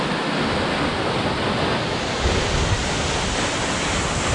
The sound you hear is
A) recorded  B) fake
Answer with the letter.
A